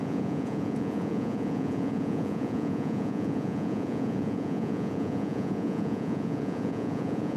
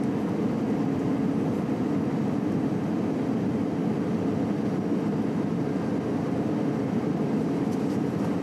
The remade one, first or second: first